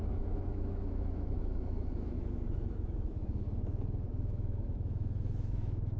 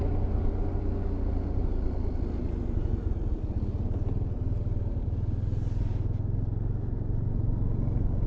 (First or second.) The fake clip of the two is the first